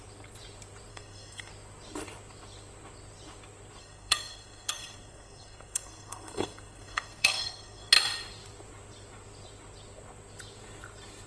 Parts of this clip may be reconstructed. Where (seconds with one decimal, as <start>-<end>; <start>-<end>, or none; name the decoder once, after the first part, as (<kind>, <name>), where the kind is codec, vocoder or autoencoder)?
0.9-1.5 (codec, SNAC); 3.8-7.9